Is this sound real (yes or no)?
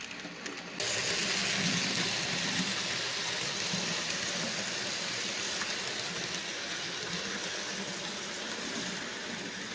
yes